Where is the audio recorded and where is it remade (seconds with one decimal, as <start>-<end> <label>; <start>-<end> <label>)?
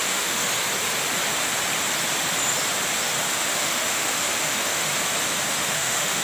0.0-0.5 remade; 0.5-3.3 recorded; 3.3-4.9 remade; 4.9-5.6 recorded; 5.6-6.2 remade